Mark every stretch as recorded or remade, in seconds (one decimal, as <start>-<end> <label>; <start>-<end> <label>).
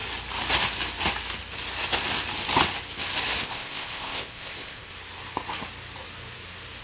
0.0-3.4 recorded; 3.4-4.9 remade; 4.9-6.8 recorded